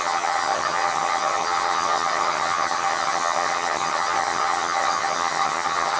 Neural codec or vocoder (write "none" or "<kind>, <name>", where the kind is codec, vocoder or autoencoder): vocoder, HiFi-GAN